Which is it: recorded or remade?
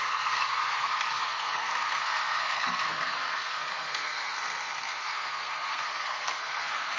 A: remade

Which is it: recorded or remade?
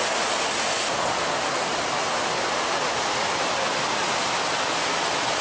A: recorded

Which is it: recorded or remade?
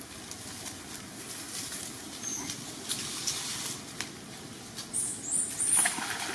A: recorded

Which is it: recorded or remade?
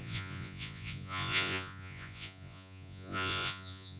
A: remade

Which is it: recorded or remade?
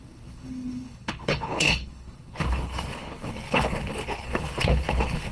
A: remade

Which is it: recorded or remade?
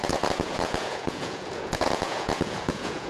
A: remade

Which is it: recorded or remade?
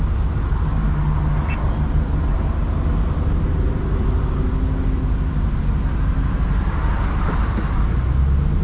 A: recorded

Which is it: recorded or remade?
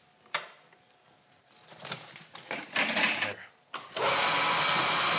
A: recorded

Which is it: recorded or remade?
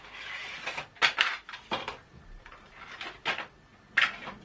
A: recorded